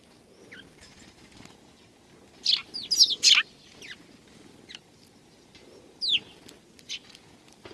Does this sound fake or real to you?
real